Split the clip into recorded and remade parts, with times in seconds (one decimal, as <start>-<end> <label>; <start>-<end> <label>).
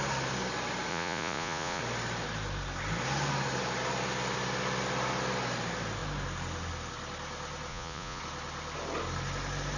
0.0-0.9 recorded; 0.9-1.8 remade; 1.8-7.7 recorded; 7.7-8.2 remade; 8.2-9.8 recorded